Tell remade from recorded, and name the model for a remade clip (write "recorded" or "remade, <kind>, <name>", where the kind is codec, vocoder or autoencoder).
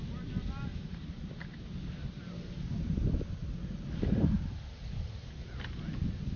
recorded